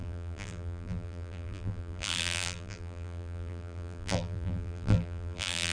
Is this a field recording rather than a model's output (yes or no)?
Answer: no